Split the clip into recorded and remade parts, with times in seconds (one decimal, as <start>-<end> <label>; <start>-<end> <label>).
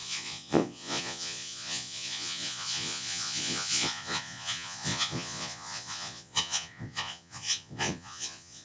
0.0-8.6 remade